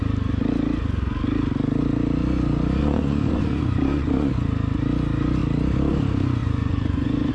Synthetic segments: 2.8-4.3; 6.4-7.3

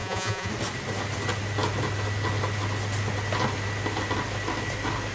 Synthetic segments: 0.0-0.5